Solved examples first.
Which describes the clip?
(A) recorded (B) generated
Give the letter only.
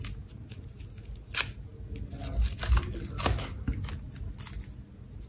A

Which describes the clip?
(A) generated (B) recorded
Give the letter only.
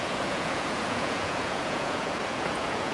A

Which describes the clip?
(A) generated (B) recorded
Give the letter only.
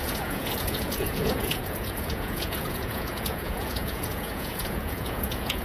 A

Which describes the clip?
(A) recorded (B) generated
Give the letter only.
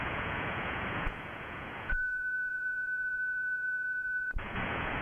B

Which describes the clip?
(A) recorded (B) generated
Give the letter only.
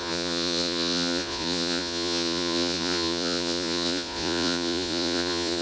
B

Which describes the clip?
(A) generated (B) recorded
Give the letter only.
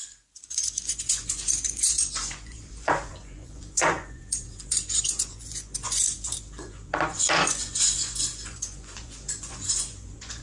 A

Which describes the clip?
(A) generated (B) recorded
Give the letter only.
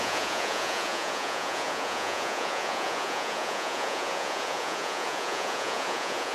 A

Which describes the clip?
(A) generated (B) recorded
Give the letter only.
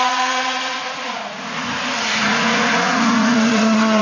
A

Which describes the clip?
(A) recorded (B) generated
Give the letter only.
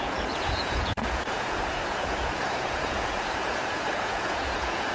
B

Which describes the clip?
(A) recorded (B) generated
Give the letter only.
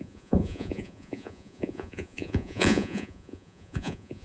B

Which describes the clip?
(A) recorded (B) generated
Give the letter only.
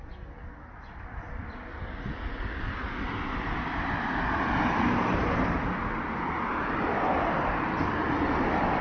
A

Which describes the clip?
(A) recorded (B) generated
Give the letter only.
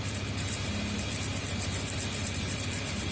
A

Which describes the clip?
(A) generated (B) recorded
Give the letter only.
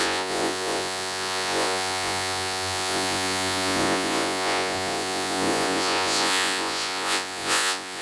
A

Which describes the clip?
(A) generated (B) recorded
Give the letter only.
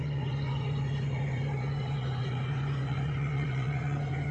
A